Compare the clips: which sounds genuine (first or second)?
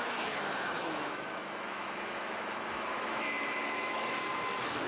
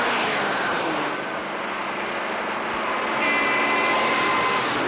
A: second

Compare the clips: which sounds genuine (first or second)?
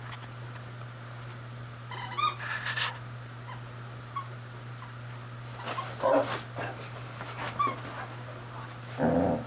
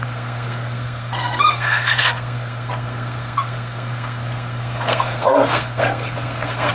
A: first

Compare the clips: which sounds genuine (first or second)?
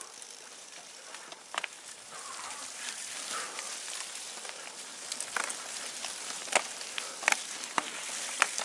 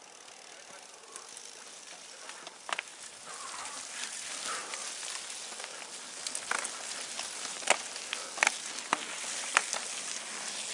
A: second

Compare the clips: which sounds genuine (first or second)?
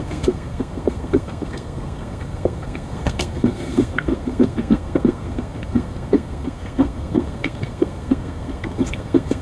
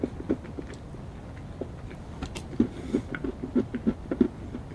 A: second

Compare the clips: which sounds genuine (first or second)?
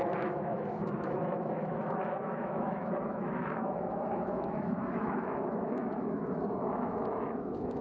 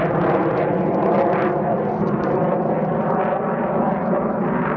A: second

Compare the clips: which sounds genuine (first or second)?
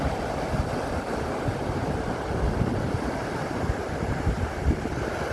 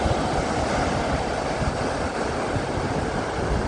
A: second